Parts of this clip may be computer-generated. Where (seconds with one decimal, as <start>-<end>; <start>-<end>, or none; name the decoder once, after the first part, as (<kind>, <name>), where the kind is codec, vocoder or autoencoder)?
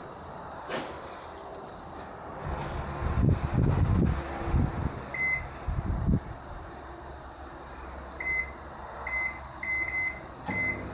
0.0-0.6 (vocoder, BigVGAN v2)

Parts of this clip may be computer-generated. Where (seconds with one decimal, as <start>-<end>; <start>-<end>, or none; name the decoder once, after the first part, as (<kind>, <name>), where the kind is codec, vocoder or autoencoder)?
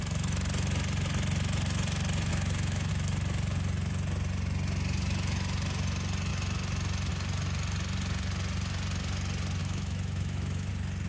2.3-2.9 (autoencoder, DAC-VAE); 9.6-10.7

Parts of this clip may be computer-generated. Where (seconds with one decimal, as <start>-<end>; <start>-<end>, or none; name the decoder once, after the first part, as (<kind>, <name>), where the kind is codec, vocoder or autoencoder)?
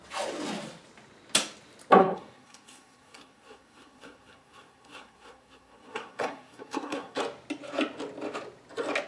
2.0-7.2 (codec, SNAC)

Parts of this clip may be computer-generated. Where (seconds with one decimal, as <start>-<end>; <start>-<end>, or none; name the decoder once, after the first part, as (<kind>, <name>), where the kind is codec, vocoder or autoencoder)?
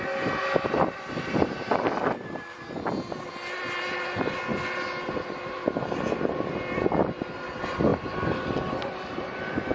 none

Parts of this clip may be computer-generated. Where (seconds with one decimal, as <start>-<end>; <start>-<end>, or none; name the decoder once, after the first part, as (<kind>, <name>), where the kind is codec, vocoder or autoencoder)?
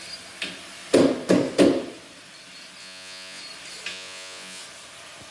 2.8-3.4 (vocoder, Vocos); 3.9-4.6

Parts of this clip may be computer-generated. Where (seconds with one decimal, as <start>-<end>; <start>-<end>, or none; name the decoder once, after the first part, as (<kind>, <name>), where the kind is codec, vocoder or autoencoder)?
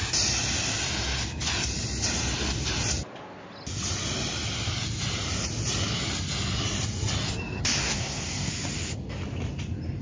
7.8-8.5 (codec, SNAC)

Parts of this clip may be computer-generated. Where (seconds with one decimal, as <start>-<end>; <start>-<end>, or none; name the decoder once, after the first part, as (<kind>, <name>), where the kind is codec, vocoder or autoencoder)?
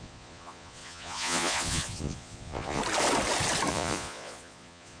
0.0-2.8 (vocoder, Vocos); 3.7-5.0